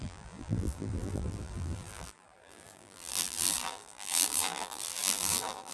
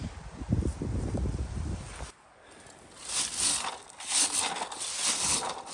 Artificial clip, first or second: first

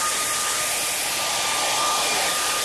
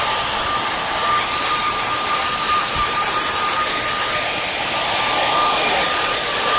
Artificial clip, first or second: second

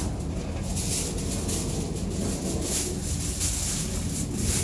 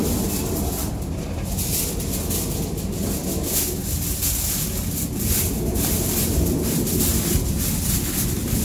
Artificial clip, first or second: second